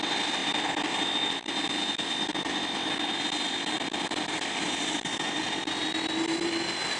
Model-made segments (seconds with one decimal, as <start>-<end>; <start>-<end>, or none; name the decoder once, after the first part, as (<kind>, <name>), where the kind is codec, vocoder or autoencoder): none